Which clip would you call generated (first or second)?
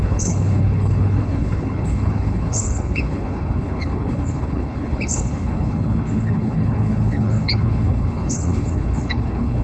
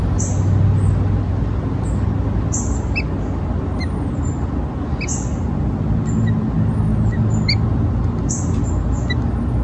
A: first